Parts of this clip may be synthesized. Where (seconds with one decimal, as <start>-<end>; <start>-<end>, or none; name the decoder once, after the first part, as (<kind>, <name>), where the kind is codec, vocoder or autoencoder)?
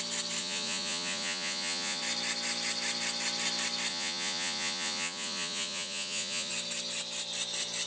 0.4-2.0 (vocoder, Vocos); 3.9-6.5